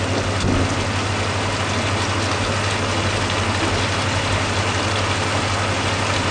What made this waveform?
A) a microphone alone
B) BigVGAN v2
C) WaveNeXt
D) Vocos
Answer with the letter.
A